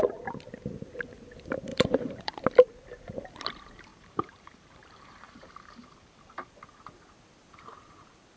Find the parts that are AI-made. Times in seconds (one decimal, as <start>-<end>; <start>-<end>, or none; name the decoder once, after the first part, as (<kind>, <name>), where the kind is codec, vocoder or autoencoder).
1.7-2.3 (vocoder, BigVGAN v2); 3.9-6.5